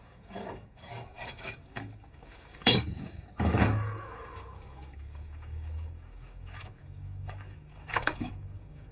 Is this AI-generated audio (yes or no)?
yes